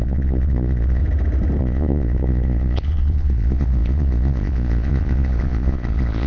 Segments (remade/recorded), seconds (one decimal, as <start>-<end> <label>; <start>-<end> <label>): 0.0-1.0 remade; 1.0-1.6 recorded; 1.6-6.3 remade